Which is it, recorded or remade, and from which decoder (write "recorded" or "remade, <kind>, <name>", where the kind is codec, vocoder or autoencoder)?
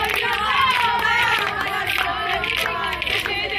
remade, vocoder, BigVGAN v2